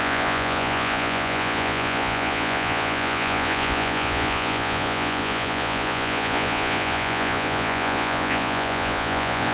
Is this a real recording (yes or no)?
no